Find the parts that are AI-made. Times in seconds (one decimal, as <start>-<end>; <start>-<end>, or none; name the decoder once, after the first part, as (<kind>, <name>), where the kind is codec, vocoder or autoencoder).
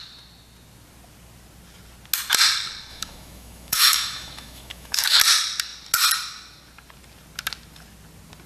2.9-5.2 (autoencoder, DAC-VAE)